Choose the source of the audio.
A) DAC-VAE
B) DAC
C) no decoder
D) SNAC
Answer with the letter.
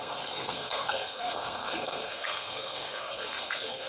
D